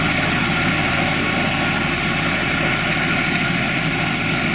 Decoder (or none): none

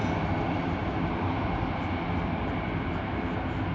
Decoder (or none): none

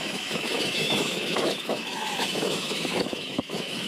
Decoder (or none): autoencoder, DAC-VAE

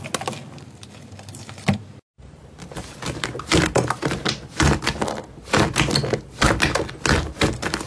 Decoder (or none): none